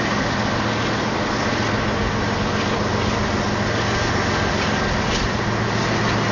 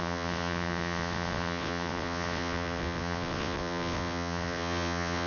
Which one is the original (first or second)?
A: first